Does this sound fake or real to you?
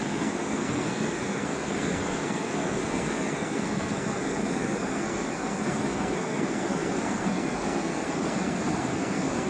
fake